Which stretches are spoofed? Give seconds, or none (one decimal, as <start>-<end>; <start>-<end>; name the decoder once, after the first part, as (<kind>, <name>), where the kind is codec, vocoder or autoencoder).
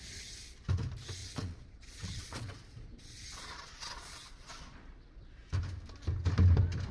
1.2-5.3 (vocoder, Vocos)